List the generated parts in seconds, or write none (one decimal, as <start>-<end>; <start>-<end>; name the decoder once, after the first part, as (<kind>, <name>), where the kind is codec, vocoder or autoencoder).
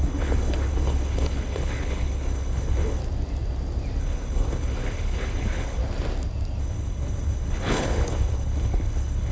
0.0-3.0 (codec, HILCodec); 4.0-5.8; 6.6-9.3